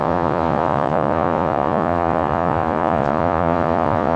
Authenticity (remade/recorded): remade